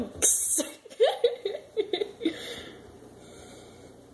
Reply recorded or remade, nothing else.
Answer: remade